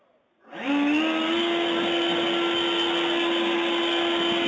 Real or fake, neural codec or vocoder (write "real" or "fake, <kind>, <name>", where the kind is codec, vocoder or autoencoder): real